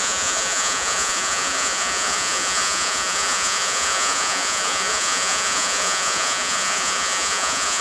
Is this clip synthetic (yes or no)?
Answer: yes